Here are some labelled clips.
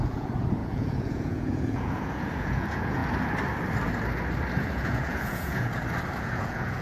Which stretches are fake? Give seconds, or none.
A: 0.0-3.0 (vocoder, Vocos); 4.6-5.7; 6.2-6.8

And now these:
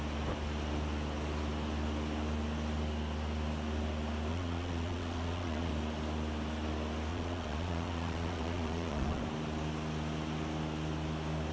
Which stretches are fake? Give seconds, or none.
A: 4.3-5.7 (vocoder, Vocos); 7.1-9.2

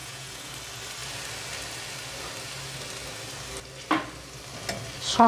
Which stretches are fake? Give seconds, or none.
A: 0.0-0.5 (vocoder, Vocos)

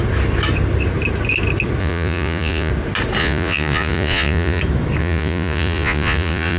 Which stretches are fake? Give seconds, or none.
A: 1.8-2.7 (vocoder, Vocos); 3.2-4.6; 5.0-6.6

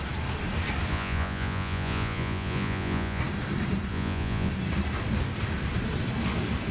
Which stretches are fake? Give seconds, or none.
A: 0.9-3.2 (vocoder, Vocos); 3.9-4.5

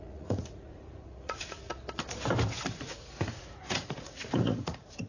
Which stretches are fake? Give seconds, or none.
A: 0.0-1.7 (vocoder, Vocos); 2.7-5.1

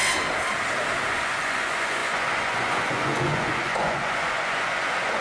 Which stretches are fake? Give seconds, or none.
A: 1.1-5.2 (vocoder, Vocos)

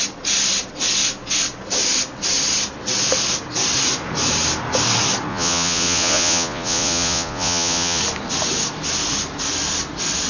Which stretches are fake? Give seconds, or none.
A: 5.3-8.0 (vocoder, Vocos)